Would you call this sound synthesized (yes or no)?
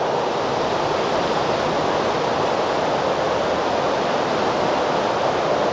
no